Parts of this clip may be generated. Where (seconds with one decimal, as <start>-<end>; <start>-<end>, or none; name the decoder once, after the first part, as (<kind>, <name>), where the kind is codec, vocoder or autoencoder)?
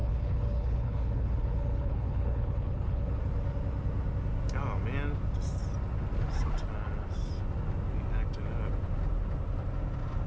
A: 0.0-3.2 (codec, HILCodec)